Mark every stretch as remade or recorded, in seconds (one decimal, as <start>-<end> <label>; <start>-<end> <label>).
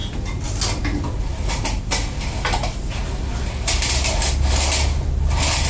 0.0-5.7 recorded